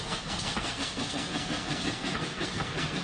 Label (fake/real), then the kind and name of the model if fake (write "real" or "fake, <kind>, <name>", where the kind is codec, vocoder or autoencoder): fake, codec, SNAC